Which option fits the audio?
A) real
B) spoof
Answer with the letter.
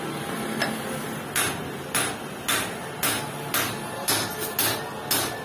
A